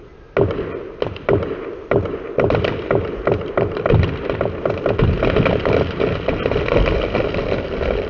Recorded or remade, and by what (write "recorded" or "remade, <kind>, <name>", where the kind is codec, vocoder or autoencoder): recorded